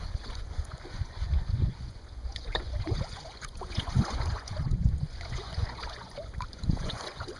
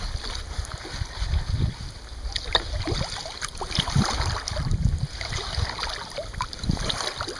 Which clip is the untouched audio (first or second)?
second